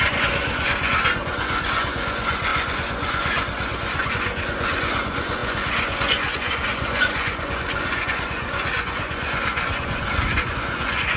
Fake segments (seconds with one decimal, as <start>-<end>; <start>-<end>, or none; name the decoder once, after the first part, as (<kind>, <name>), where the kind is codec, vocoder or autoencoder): 0.0-11.2 (vocoder, Vocos)